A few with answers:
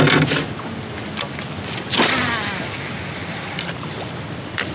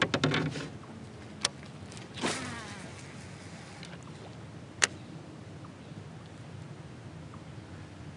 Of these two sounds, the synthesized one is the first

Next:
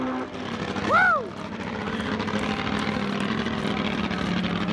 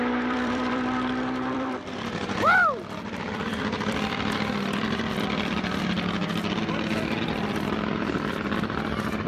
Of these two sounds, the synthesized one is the second